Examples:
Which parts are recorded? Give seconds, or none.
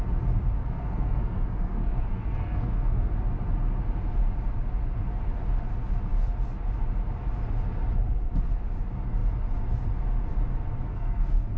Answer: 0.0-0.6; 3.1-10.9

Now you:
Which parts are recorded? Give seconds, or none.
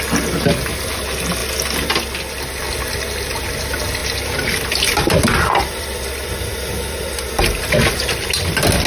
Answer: 0.0-4.0; 7.4-8.9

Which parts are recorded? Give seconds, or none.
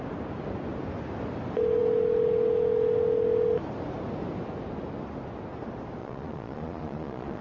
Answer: 0.0-6.0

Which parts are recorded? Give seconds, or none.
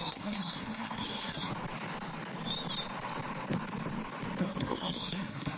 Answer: 1.5-4.4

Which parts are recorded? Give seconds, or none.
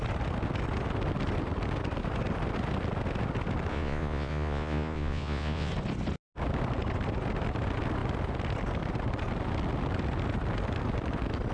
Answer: 0.0-3.7; 5.7-11.5